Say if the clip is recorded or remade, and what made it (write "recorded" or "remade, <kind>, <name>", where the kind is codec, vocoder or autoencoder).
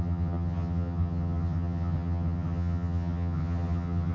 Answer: remade, vocoder, HiFi-GAN